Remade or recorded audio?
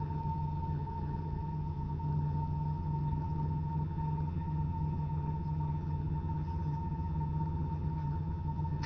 remade